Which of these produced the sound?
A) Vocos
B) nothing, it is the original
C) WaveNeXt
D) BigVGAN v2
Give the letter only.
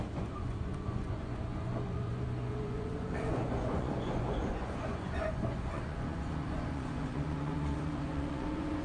A